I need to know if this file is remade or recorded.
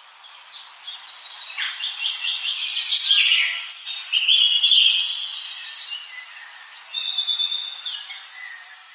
recorded